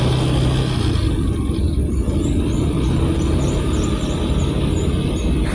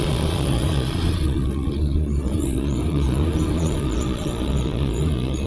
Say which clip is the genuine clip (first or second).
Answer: first